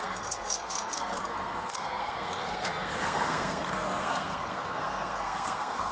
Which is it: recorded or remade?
remade